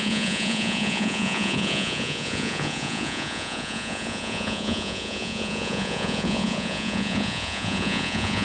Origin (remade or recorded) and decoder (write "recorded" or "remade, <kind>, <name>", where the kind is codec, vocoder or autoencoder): remade, vocoder, Vocos